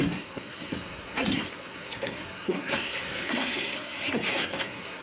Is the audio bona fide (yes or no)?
no